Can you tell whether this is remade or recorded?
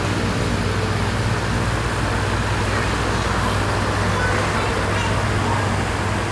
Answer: recorded